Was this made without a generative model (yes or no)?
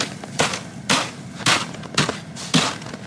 yes